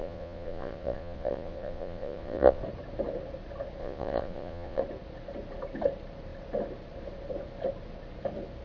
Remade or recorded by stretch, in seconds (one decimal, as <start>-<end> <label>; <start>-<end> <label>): 0.0-2.6 remade; 2.6-3.8 recorded; 3.8-4.8 remade; 4.8-8.6 recorded